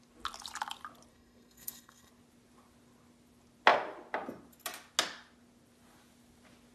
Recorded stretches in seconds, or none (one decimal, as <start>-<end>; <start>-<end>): 0.0-1.1; 2.1-6.7